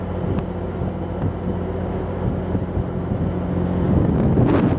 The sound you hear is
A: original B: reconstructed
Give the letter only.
A